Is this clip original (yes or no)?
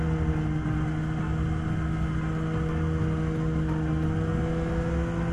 yes